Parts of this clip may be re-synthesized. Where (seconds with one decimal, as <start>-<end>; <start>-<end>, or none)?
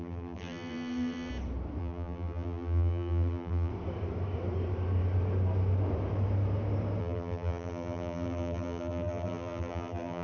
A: 0.0-1.3; 1.8-3.7; 7.0-10.2